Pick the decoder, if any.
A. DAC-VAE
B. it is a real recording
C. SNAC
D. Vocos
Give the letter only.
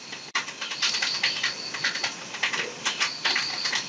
B